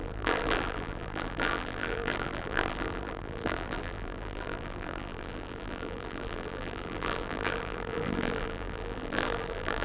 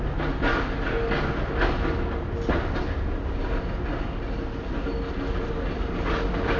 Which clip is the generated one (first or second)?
first